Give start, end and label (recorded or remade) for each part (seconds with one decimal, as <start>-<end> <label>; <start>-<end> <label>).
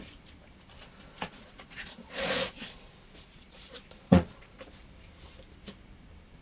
0.0-0.8 recorded; 0.8-4.6 remade; 4.6-6.4 recorded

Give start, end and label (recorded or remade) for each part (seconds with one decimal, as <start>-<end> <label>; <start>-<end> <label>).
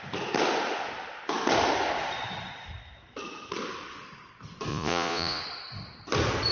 0.0-4.7 recorded; 4.7-5.4 remade; 5.4-6.5 recorded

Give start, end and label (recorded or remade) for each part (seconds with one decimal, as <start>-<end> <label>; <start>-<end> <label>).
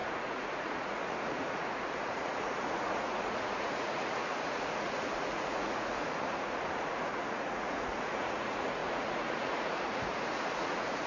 0.0-11.1 remade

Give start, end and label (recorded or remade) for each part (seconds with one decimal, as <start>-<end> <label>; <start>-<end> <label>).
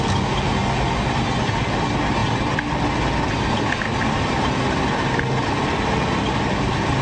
0.0-7.0 recorded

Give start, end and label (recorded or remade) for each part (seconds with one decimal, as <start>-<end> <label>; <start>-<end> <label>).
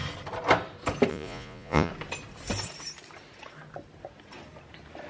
0.0-1.1 recorded; 1.1-1.9 remade; 1.9-5.1 recorded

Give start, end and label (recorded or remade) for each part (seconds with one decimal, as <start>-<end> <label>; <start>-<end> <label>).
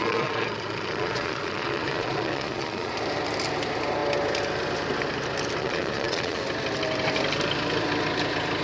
0.0-2.9 remade; 2.9-5.6 recorded; 5.6-6.4 remade; 6.4-8.6 recorded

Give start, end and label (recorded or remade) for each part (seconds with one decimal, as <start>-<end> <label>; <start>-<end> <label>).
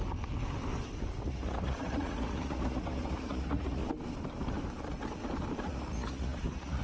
0.0-1.2 recorded; 1.2-3.8 remade; 3.8-5.6 recorded; 5.6-6.8 remade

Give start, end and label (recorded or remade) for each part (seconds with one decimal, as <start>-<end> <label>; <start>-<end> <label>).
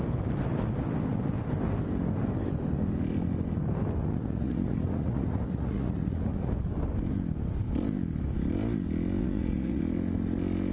0.0-4.0 recorded; 4.0-6.5 remade; 6.5-9.2 recorded; 9.2-9.8 remade; 9.8-10.7 recorded